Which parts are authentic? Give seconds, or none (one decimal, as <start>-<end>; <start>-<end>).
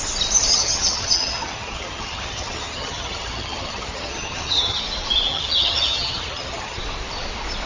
0.0-0.5; 4.8-5.3; 6.8-7.7